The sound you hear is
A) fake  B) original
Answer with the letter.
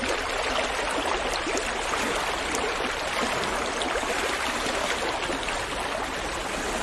B